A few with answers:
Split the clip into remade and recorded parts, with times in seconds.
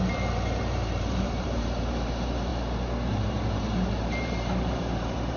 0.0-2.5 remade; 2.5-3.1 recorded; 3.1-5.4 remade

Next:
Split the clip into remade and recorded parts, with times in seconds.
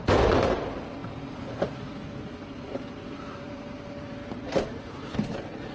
0.0-4.2 remade; 4.2-4.8 recorded; 4.8-5.7 remade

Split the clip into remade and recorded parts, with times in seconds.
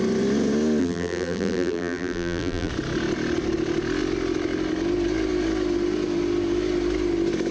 0.0-0.8 recorded; 0.8-2.7 remade; 2.7-7.5 recorded